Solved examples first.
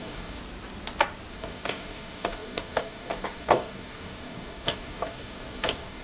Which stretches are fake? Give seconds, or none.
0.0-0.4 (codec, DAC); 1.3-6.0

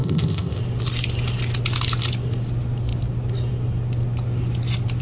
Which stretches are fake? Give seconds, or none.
0.0-0.6 (codec, ZipCodec)

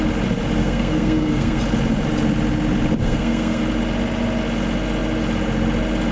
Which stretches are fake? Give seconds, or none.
0.6-1.6 (codec, SNAC); 3.0-3.6

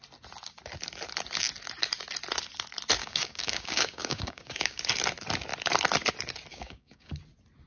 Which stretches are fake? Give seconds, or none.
3.0-4.8 (codec, DAC); 6.5-7.1

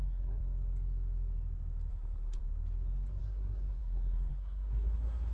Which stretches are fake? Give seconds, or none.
0.0-0.4 (codec, SNAC); 1.9-2.4; 3.2-5.3